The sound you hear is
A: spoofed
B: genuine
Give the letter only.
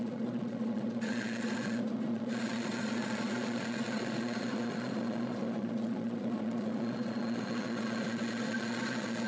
A